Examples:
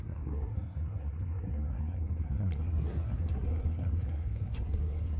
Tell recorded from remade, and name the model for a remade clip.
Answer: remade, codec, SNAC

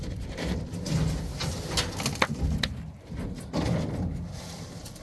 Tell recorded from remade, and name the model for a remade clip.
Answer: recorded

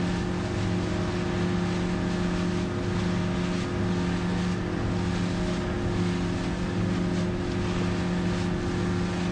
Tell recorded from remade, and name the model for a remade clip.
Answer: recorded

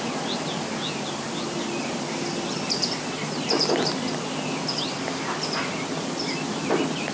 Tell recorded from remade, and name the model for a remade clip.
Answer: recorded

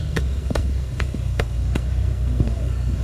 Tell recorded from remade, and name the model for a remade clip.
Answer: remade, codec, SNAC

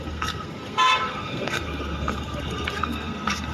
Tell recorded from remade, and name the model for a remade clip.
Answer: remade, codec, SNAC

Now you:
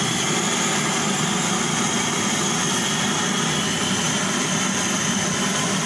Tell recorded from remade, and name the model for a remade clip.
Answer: recorded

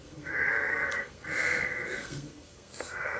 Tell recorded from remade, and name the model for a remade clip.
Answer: remade, codec, SNAC